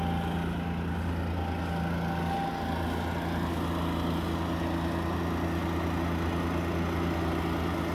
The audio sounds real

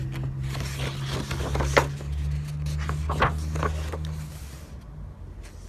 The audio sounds real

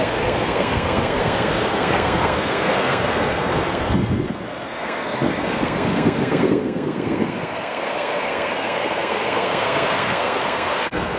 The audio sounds fake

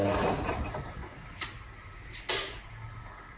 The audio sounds real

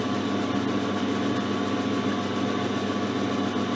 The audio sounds real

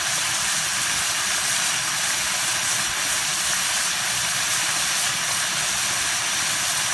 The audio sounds real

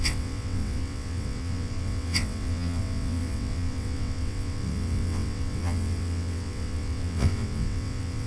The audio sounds fake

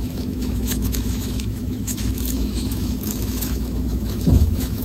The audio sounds fake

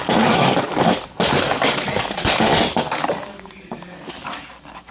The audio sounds fake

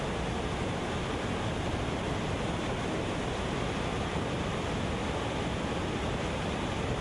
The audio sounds real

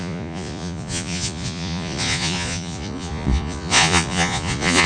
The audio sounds fake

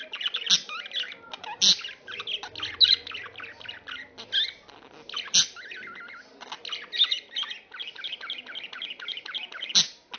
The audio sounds real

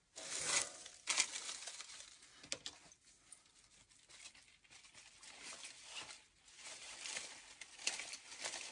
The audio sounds real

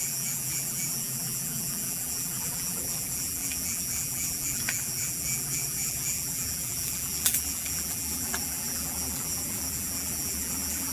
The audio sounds fake